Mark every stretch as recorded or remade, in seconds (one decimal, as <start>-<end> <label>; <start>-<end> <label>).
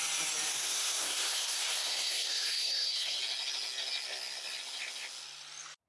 0.0-0.5 recorded; 0.5-3.2 remade; 3.2-5.9 recorded